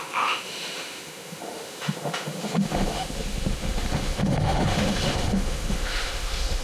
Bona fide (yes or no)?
no